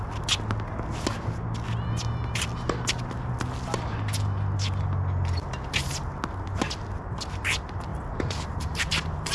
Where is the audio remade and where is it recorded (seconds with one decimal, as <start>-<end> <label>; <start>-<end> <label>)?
0.0-7.9 recorded; 7.9-9.3 remade